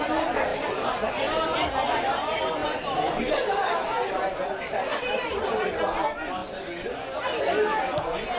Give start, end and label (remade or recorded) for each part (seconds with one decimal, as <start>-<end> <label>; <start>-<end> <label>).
0.0-0.5 recorded; 0.5-1.1 remade; 1.1-2.6 recorded; 2.6-3.2 remade; 3.2-4.9 recorded; 4.9-5.8 remade; 5.8-8.4 recorded